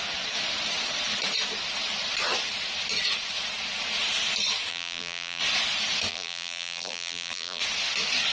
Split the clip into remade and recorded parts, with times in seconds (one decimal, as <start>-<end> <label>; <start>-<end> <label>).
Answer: 0.0-4.7 recorded; 4.7-5.4 remade; 5.4-6.1 recorded; 6.1-7.6 remade; 7.6-8.3 recorded